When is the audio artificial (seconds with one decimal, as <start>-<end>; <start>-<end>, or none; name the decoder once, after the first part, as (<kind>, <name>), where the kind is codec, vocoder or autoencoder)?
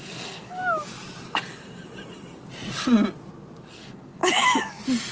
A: 0.0-0.6 (codec, SNAC); 3.7-4.2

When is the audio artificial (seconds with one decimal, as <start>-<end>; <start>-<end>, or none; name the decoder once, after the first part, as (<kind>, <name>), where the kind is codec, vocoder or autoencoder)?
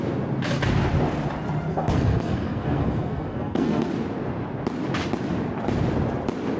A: 1.7-3.9 (codec, SNAC)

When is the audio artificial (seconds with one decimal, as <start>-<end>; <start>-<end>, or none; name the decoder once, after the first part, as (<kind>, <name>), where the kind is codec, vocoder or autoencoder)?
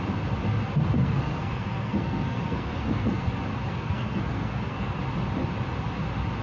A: 0.9-3.3 (codec, SNAC); 3.7-5.0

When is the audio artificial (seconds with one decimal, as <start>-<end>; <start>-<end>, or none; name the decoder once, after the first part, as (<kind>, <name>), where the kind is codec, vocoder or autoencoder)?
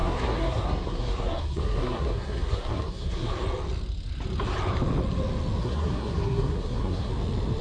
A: 0.0-3.3 (codec, SNAC); 5.6-7.1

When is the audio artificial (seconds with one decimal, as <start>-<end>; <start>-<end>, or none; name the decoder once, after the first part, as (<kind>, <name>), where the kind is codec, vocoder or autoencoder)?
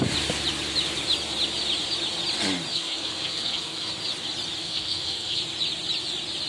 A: 2.7-3.9 (codec, SNAC); 4.6-5.4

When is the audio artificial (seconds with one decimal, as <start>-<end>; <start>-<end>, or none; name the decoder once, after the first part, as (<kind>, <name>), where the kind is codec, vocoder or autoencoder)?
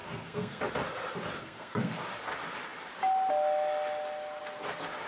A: 0.0-0.6 (codec, SNAC); 1.4-2.0